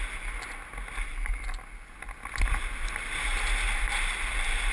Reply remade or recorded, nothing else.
recorded